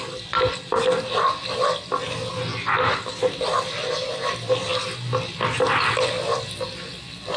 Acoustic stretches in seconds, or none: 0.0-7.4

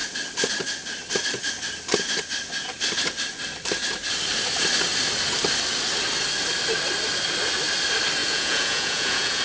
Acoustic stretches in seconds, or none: 0.0-8.2

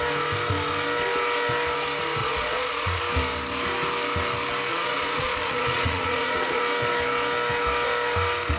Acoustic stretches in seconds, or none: 0.0-2.2; 3.0-4.7; 6.6-8.6

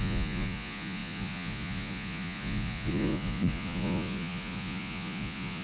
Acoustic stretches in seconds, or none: none

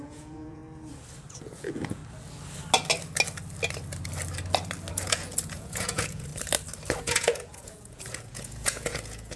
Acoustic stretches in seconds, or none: 0.6-1.3; 2.0-4.9; 6.3-7.0